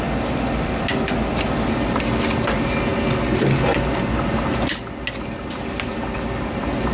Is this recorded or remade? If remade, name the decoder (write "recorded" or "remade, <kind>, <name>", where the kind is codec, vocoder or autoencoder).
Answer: recorded